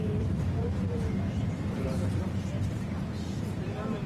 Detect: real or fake fake